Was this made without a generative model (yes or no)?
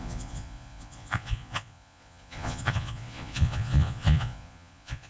no